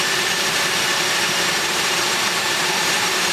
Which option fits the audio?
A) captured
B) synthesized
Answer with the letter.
B